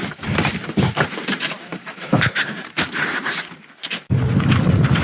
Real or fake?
fake